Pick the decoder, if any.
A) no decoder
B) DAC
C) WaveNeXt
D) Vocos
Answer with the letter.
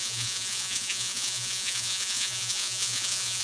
D